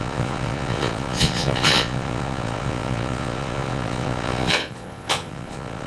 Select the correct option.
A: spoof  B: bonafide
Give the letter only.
A